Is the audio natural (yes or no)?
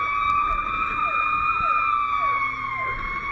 yes